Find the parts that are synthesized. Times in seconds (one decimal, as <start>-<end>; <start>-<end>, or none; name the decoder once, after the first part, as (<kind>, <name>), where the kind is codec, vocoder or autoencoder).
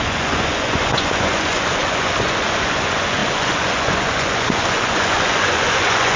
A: 0.0-6.2 (vocoder, Vocos)